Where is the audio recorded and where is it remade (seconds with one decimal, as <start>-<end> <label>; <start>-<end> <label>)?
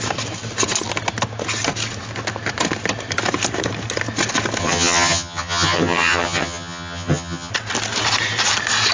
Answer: 0.0-4.6 recorded; 4.6-7.5 remade; 7.5-8.9 recorded